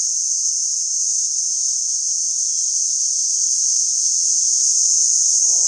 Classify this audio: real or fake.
fake